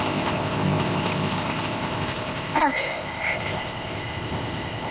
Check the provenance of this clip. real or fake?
fake